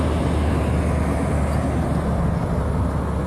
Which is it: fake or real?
real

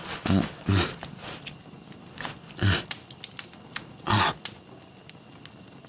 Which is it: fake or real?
real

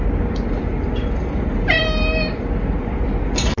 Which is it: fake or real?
real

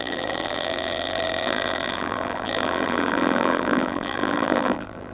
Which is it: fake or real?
fake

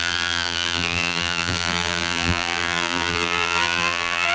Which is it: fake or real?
fake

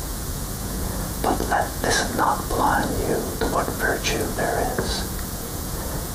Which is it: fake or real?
fake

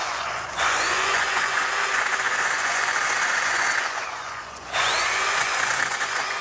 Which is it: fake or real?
fake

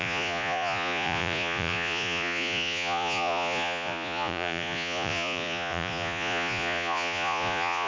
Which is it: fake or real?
fake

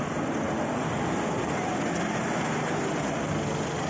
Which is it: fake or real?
real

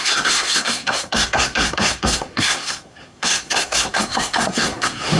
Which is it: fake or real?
fake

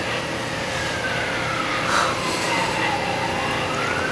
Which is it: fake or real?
real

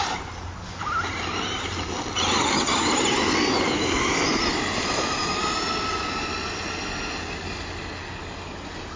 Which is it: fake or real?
real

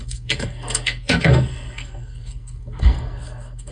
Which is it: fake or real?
fake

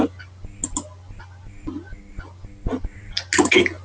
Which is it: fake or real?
real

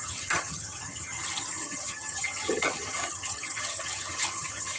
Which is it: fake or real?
fake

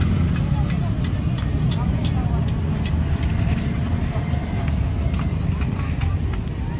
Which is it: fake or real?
real